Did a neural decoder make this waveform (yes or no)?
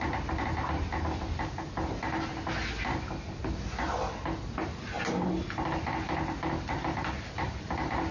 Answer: no